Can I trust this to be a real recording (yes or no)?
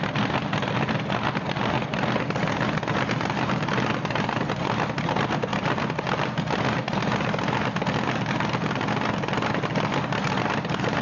yes